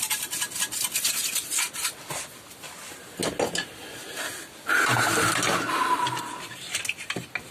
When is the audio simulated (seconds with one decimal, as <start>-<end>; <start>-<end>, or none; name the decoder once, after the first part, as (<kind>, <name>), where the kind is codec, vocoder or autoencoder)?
none